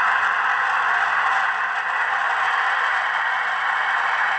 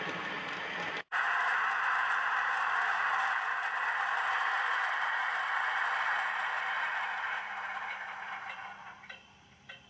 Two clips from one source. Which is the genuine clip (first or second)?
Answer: first